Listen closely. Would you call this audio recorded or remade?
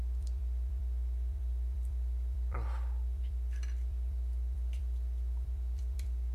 remade